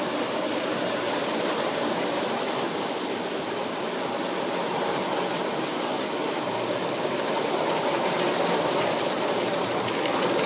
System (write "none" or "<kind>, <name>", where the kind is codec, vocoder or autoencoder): vocoder, BigVGAN v2